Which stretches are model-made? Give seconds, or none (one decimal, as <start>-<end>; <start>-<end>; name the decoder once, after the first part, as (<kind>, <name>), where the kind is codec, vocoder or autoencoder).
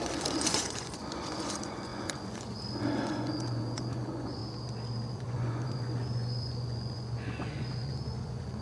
0.0-4.4 (vocoder, Vocos); 5.1-8.6